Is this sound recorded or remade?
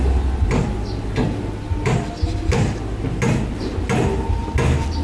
recorded